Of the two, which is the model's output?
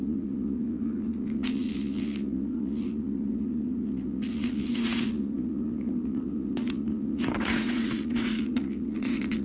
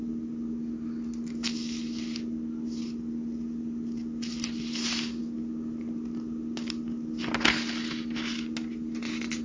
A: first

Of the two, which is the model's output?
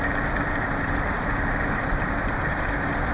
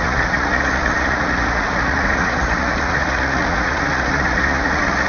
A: second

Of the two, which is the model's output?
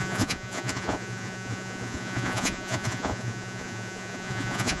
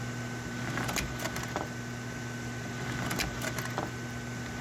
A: first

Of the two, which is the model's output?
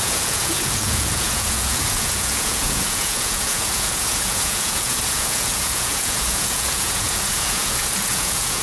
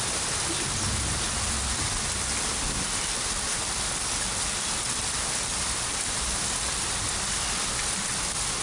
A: first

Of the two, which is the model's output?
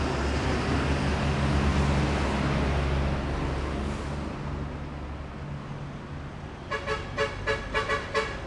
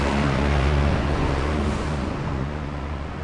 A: second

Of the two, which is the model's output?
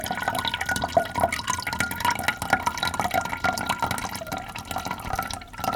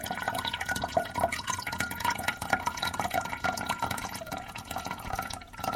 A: second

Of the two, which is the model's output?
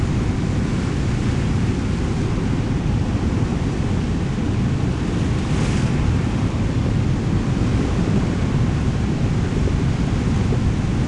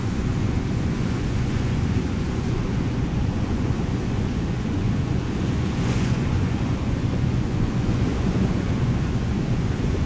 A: second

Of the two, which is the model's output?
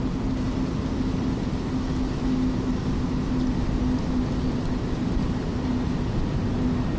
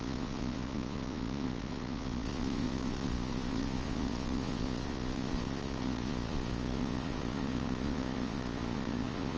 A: second